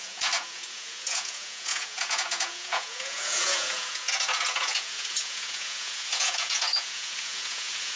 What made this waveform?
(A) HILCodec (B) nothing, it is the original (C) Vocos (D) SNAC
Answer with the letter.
C